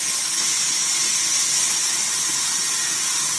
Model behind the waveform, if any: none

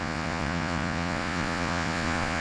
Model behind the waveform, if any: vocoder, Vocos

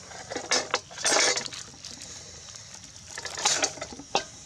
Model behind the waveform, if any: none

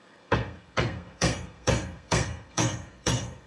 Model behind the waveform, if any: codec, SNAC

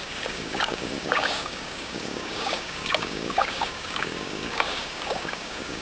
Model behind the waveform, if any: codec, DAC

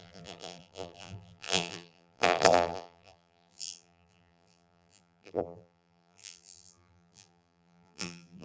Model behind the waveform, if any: vocoder, BigVGAN v2